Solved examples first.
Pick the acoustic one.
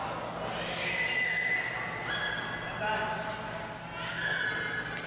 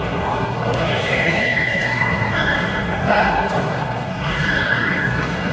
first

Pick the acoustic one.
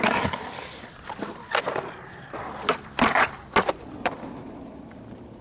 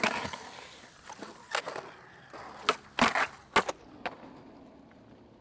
second